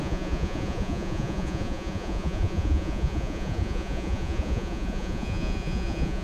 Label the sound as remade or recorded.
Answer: remade